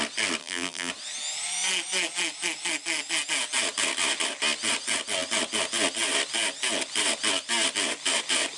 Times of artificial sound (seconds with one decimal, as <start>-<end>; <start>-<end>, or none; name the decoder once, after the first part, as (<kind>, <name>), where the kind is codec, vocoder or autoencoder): 0.4-0.9 (vocoder, BigVGAN v2)

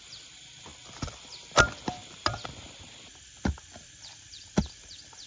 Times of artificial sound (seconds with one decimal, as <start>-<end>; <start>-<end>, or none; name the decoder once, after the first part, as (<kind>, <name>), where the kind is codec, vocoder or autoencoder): 2.0-5.3 (vocoder, BigVGAN v2)